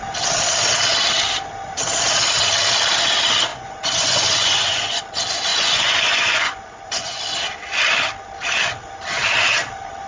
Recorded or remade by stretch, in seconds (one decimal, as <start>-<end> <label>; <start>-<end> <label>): 0.0-3.5 recorded; 3.5-5.0 remade; 5.0-5.5 recorded; 5.5-7.2 remade; 7.2-10.1 recorded